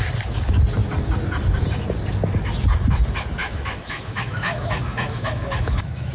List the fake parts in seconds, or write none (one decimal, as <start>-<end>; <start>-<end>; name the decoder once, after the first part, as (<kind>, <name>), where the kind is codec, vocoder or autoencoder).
3.4-6.1 (autoencoder, DAC-VAE)